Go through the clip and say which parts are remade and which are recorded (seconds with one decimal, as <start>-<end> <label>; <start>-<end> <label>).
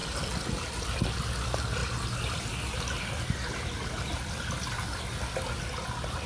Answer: 0.0-6.3 recorded